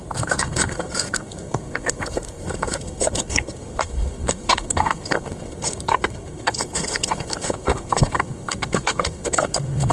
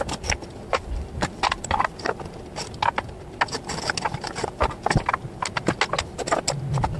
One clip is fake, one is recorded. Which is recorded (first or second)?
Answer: second